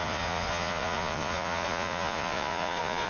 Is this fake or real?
fake